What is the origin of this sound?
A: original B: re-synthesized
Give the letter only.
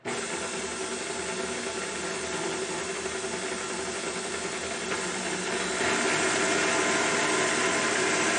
A